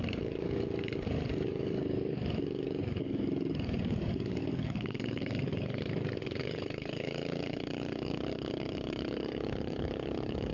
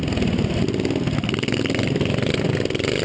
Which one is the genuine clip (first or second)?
second